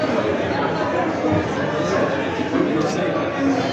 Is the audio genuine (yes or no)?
yes